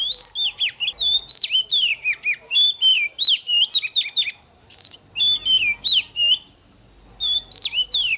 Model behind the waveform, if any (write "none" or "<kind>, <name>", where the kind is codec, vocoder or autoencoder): none